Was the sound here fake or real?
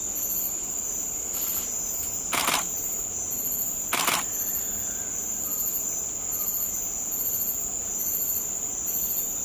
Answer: real